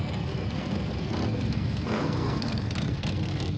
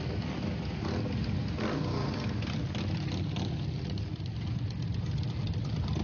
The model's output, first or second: first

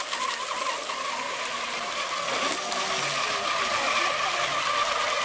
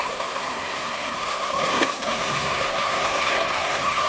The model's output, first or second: second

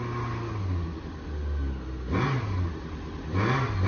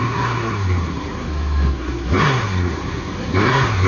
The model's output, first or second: second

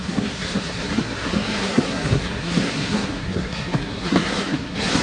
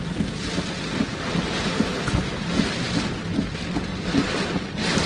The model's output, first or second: first